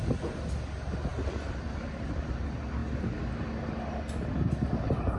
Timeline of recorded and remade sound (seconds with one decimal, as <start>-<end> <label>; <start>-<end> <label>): 0.0-5.2 recorded